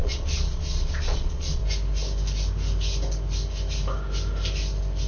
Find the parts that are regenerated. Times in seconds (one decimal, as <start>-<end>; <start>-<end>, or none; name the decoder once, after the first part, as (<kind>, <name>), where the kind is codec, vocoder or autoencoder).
0.0-1.6 (vocoder, Vocos)